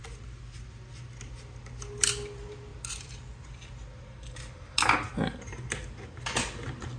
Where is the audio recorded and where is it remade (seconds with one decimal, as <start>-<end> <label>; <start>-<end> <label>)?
0.0-7.0 recorded